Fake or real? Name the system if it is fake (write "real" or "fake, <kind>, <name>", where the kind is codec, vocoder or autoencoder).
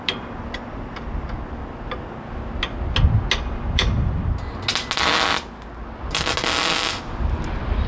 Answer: real